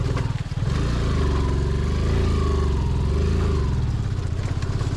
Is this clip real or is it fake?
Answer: real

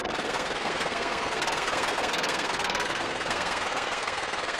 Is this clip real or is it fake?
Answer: fake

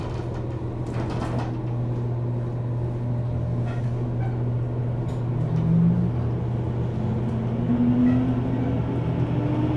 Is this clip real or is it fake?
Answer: real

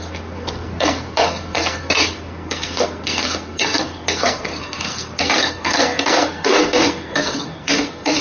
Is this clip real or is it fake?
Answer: fake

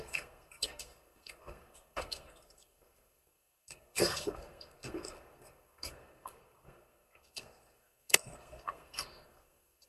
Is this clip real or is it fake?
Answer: fake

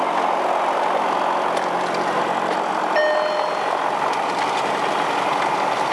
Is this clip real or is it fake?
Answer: real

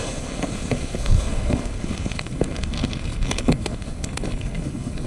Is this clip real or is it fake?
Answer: fake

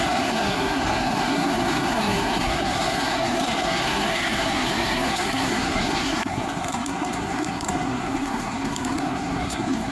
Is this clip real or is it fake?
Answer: fake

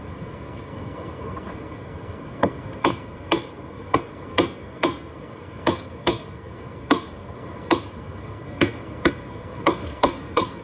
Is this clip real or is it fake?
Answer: fake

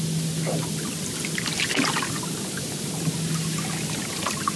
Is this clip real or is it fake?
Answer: real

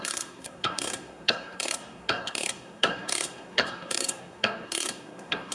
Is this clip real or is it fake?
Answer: fake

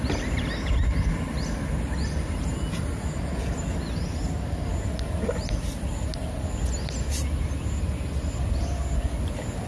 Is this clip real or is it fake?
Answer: real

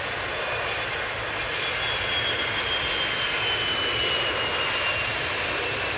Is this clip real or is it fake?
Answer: real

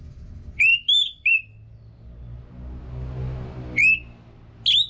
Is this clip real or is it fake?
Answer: real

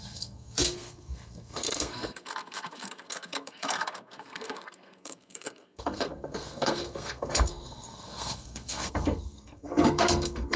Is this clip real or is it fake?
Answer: fake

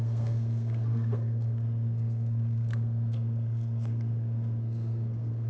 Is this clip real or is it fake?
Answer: fake